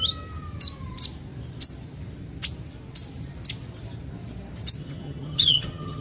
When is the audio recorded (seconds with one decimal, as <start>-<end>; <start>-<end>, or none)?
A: 0.0-4.8